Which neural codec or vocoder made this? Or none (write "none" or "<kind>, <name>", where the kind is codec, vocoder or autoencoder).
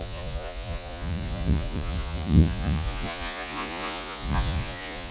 vocoder, Vocos